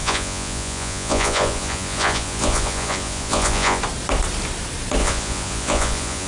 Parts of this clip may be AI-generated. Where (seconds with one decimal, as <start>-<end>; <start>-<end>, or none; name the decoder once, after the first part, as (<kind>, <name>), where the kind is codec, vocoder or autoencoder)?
0.0-3.8 (vocoder, Vocos); 5.0-6.3